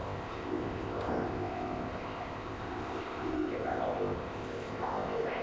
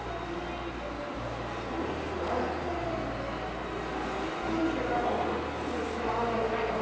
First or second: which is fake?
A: first